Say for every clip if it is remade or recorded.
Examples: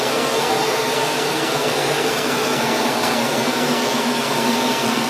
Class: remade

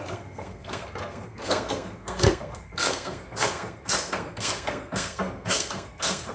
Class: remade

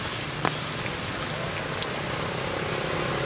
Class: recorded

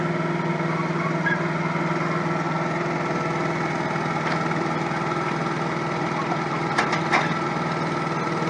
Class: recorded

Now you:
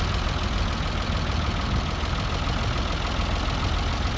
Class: recorded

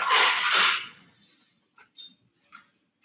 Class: recorded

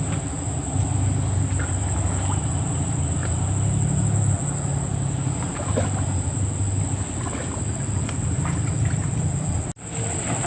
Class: recorded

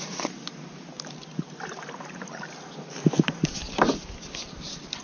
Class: recorded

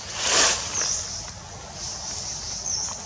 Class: recorded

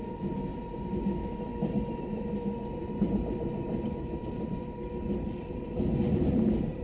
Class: remade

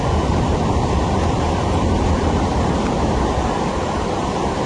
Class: remade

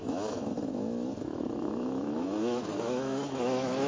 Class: remade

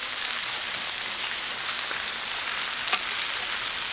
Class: recorded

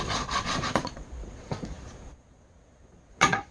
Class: remade